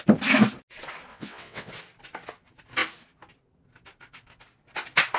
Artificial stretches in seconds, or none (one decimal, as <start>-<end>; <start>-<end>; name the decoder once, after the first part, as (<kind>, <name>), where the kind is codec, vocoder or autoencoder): 1.1-1.7 (vocoder, WaveNeXt)